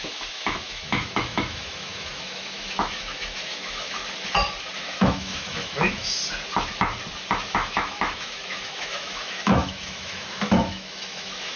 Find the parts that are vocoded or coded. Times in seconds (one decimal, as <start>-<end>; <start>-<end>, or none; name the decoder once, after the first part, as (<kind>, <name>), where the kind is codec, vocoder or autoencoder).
0.0-4.0 (autoencoder, DAC-VAE); 4.8-6.2; 7.5-11.6